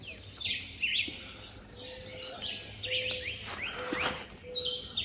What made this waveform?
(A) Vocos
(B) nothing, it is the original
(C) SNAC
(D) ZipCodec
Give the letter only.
B